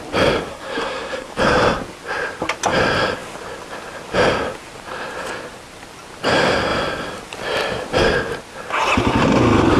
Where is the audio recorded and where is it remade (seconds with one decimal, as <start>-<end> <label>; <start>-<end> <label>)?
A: 0.0-0.5 recorded; 0.5-1.3 remade; 1.3-9.8 recorded